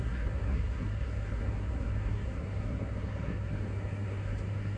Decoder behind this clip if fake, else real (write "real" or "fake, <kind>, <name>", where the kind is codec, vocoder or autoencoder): fake, codec, SNAC